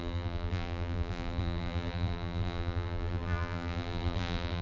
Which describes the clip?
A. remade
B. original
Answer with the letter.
A